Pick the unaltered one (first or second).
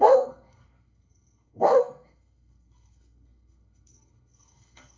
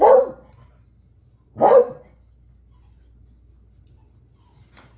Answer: second